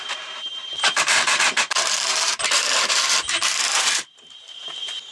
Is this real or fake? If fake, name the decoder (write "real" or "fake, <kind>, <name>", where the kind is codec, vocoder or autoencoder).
fake, vocoder, BigVGAN v2